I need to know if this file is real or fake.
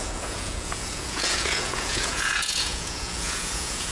fake